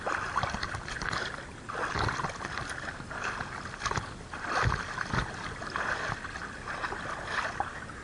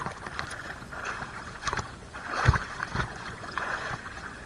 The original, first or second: first